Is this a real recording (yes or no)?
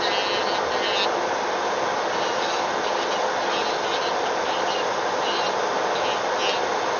yes